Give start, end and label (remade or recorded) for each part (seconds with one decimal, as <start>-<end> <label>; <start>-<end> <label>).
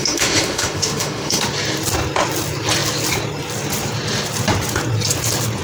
0.0-1.4 remade; 1.4-5.6 recorded